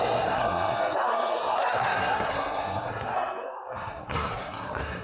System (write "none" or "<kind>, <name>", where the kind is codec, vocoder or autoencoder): codec, SNAC